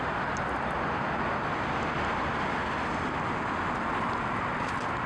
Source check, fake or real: real